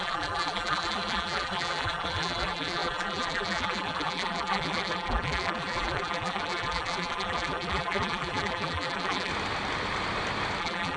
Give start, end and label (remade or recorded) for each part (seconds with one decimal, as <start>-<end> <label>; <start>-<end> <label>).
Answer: 0.0-9.3 remade; 9.3-10.6 recorded; 10.6-11.0 remade

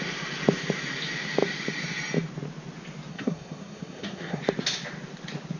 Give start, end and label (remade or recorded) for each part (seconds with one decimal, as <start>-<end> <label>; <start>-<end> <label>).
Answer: 0.0-3.1 recorded; 3.1-4.4 remade; 4.4-5.6 recorded

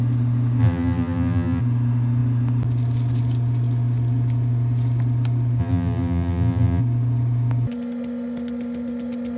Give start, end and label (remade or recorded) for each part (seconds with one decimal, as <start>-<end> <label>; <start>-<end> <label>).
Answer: 0.0-0.6 recorded; 0.6-1.6 remade; 1.6-5.6 recorded; 5.6-6.8 remade; 6.8-9.4 recorded

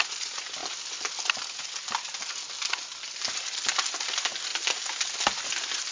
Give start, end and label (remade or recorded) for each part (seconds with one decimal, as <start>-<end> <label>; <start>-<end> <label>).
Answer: 0.0-5.9 recorded

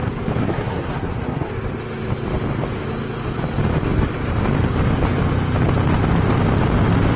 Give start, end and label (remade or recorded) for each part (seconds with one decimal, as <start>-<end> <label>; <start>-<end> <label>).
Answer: 0.0-0.4 recorded; 0.4-1.5 remade; 1.5-7.2 recorded

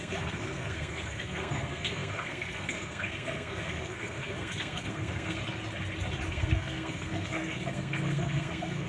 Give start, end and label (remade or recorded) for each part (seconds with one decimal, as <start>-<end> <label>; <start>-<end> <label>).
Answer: 0.0-5.4 remade; 5.4-6.3 recorded; 6.3-8.9 remade

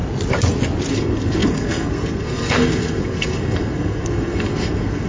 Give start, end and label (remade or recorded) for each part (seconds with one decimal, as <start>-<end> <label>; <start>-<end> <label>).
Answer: 0.0-0.9 recorded; 0.9-5.1 remade